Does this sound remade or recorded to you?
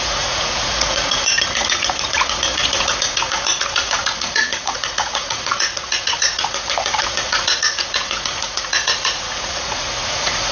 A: remade